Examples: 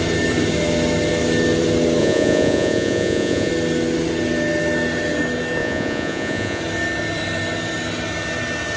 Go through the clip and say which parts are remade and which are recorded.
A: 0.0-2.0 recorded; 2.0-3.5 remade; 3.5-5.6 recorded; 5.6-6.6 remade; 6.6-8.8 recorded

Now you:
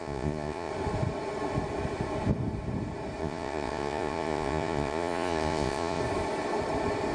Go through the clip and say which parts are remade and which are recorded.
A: 0.0-0.7 remade; 0.7-3.2 recorded; 3.2-6.0 remade; 6.0-7.1 recorded